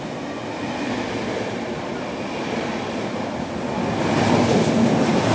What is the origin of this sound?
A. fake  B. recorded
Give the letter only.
B